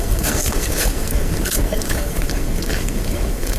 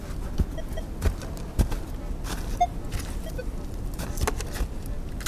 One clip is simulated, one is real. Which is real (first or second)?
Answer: second